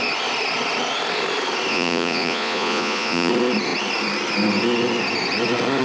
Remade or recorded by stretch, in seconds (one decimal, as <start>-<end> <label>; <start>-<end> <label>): 0.0-1.7 recorded; 1.7-3.3 remade; 3.3-5.8 recorded